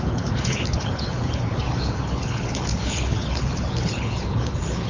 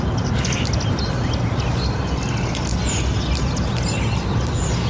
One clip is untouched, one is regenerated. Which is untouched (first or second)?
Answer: second